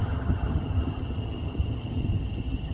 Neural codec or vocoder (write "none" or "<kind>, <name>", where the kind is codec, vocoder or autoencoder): vocoder, HiFi-GAN